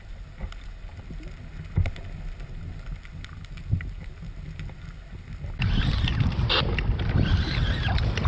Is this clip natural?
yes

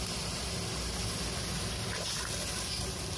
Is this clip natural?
yes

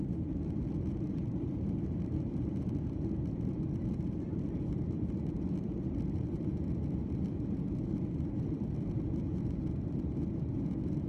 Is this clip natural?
no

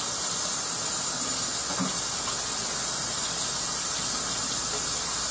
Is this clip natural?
yes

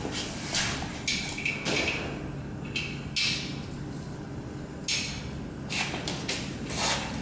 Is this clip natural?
yes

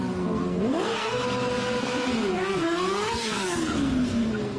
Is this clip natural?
no